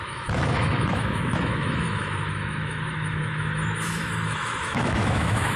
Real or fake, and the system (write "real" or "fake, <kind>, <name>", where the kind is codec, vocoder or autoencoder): fake, autoencoder, DAC-VAE